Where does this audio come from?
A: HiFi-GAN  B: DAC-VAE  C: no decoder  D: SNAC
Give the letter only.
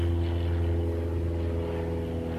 C